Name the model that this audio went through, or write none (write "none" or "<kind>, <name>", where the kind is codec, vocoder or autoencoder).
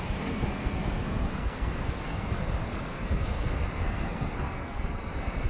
codec, SNAC